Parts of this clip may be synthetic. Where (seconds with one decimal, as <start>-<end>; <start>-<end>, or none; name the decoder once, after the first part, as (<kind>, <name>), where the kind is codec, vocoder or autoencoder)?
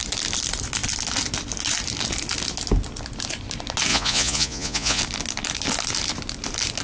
3.9-5.0 (vocoder, Vocos)